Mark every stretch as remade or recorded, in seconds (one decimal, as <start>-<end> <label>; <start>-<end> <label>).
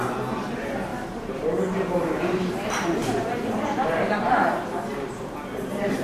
0.0-0.9 recorded; 0.9-4.2 remade; 4.2-6.0 recorded